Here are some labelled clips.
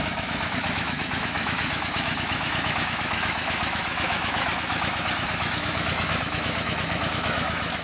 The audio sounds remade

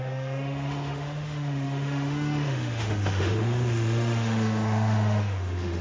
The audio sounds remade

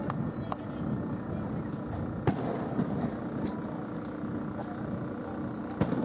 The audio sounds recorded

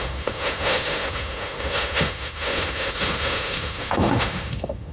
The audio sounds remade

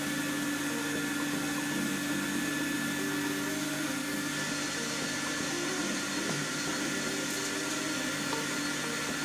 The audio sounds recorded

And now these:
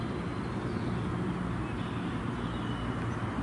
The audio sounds recorded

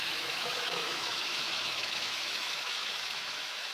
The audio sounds remade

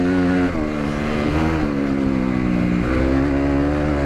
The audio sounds recorded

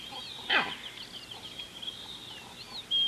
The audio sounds recorded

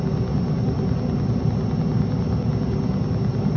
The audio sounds recorded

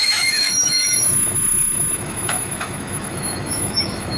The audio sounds remade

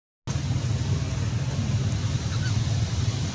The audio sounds recorded